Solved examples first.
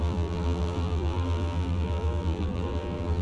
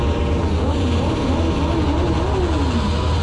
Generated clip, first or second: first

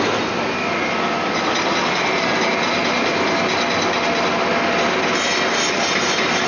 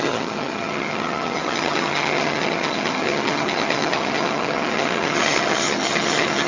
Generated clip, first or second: second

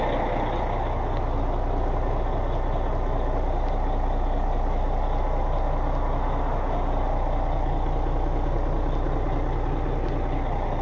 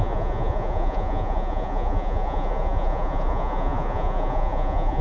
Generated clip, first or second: second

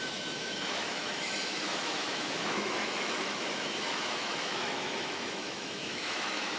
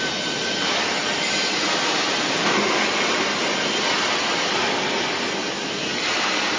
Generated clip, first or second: first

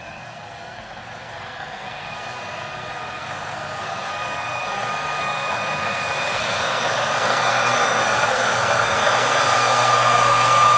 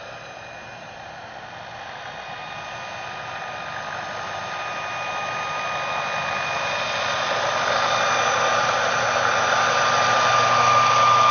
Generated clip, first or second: first